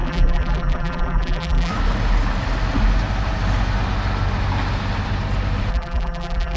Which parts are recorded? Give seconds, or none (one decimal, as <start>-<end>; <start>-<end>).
1.7-5.7